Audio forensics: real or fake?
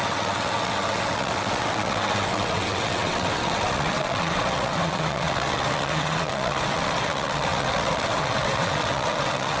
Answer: fake